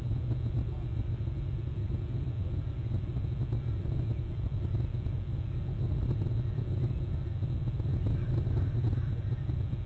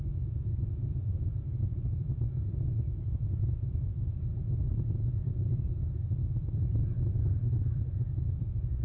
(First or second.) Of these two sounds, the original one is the first